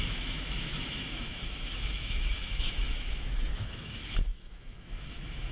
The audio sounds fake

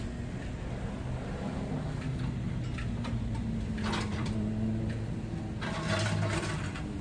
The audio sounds real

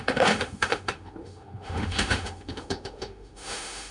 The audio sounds fake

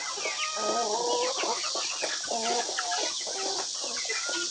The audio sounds real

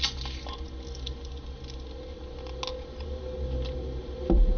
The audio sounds real